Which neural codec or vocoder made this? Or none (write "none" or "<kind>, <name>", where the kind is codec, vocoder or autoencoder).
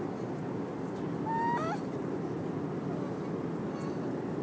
none